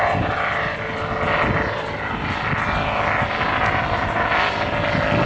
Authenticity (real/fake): real